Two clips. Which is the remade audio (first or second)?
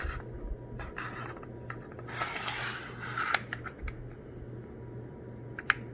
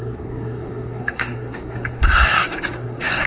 second